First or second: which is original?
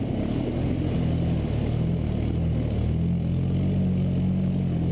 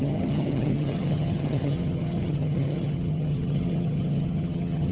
first